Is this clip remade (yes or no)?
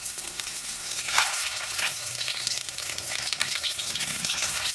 yes